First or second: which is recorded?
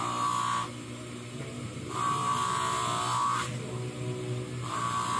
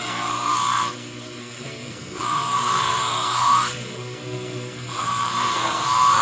first